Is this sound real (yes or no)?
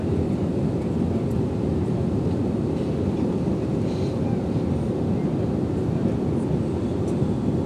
yes